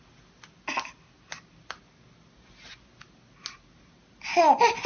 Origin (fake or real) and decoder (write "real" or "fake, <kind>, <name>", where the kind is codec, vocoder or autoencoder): real